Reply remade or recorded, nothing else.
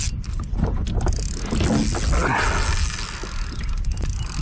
recorded